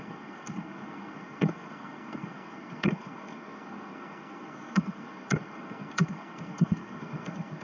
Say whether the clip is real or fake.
fake